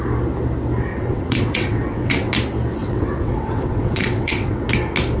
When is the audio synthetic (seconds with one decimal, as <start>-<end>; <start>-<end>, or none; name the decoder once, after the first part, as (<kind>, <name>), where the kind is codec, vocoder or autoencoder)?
0.9-2.3 (vocoder, WaveNeXt); 2.8-4.7